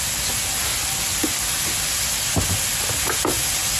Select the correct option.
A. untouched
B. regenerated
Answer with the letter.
A